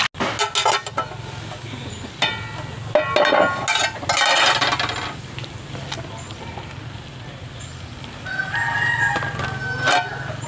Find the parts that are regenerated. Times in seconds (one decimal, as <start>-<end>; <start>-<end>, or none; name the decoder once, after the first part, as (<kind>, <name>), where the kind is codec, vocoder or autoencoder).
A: none